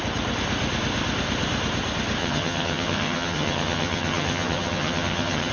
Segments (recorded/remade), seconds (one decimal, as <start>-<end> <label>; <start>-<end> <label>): 0.0-2.2 recorded; 2.2-5.5 remade